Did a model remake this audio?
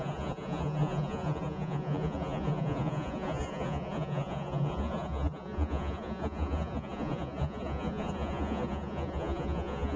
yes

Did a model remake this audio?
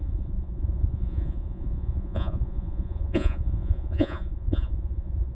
yes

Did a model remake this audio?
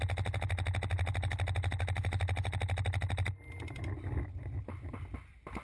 no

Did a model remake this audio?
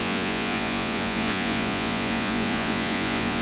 yes